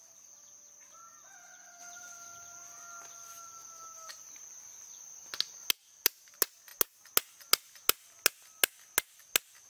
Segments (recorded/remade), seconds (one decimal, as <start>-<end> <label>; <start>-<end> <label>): 0.0-9.7 recorded